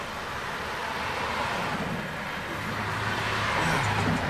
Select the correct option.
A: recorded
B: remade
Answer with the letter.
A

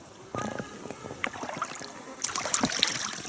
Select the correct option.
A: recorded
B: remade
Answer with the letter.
A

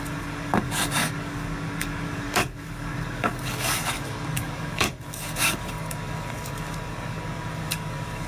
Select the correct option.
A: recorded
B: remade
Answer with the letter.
B